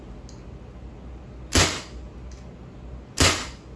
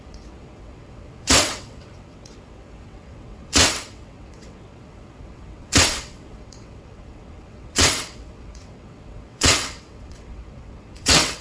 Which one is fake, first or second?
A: second